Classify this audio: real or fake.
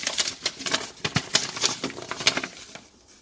real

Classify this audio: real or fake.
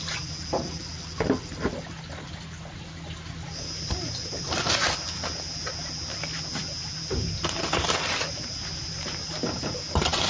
real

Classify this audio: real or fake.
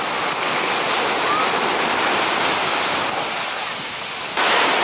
real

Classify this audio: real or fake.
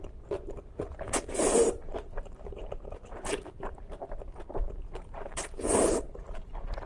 fake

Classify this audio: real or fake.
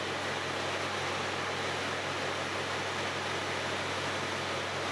real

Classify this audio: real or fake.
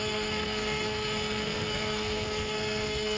fake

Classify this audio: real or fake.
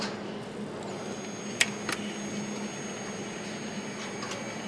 real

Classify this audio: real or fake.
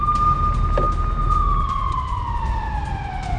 real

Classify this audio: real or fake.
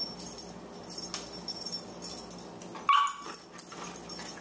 real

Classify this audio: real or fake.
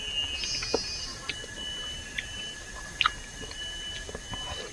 real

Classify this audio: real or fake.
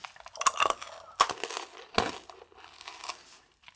real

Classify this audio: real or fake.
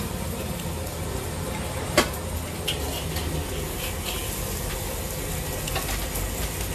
real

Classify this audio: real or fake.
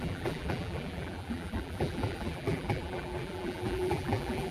fake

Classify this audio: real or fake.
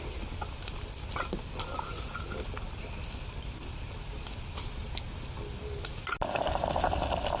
real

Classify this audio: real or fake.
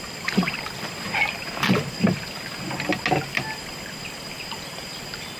real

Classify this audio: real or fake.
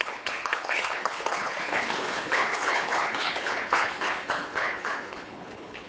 fake